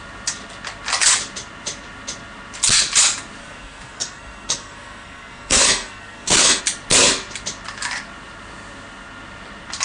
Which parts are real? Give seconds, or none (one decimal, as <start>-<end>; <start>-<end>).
0.0-3.4; 6.6-9.8